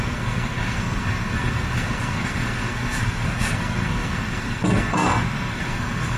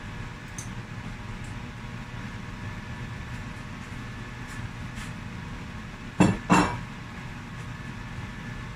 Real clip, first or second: second